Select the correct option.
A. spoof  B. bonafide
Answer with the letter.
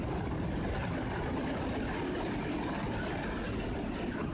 B